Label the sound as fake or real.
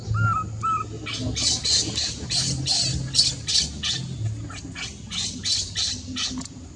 real